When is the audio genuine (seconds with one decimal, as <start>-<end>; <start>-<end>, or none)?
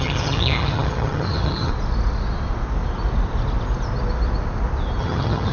1.7-5.0